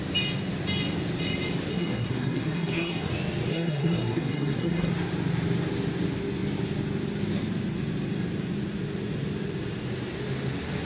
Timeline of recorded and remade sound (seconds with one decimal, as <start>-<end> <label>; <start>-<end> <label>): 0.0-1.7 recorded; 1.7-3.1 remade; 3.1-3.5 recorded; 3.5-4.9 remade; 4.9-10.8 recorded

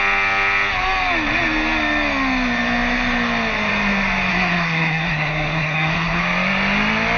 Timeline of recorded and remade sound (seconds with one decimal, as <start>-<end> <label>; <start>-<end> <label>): 0.0-4.3 recorded; 4.3-6.2 remade; 6.2-7.2 recorded

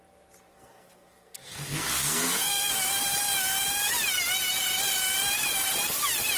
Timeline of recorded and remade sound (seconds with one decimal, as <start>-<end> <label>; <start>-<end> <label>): 0.0-0.5 recorded; 0.5-2.7 remade; 2.7-6.4 recorded

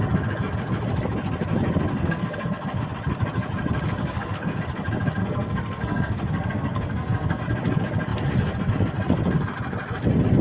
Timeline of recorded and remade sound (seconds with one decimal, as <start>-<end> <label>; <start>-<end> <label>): 0.0-1.9 recorded; 1.9-2.8 remade; 2.8-4.0 recorded; 4.0-4.6 remade; 4.6-5.2 recorded; 5.2-7.4 remade; 7.4-10.4 recorded

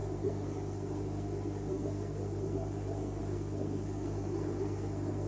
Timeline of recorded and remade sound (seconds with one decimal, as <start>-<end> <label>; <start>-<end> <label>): 0.0-5.3 remade

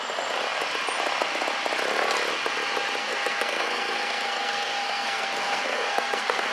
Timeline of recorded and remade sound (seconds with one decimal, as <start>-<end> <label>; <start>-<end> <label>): 0.0-3.0 recorded; 3.0-6.5 remade